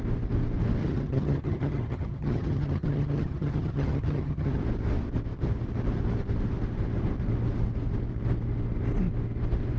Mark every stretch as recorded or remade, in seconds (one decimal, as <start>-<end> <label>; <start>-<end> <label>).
0.0-0.8 recorded; 0.8-4.6 remade; 4.6-9.8 recorded